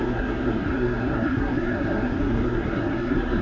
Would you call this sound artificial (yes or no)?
yes